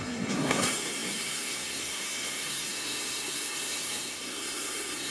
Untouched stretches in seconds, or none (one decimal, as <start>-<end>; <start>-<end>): none